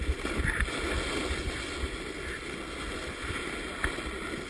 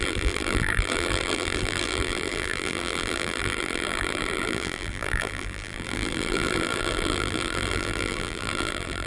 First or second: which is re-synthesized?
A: second